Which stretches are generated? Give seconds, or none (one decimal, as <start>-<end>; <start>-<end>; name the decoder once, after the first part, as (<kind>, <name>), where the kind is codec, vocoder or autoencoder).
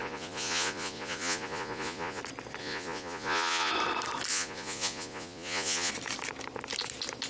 0.0-2.2 (vocoder, Vocos); 2.6-3.7; 4.3-5.9